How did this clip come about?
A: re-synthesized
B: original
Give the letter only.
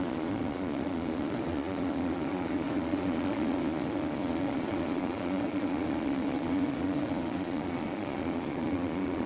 A